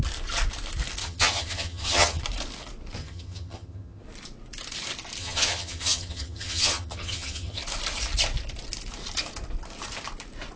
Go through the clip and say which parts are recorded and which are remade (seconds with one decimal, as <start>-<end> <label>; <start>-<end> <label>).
0.0-1.0 recorded; 1.0-2.2 remade; 2.2-3.0 recorded; 3.0-4.0 remade; 4.0-5.2 recorded; 5.2-7.6 remade; 7.6-10.6 recorded